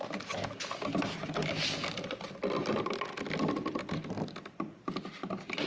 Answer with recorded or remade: recorded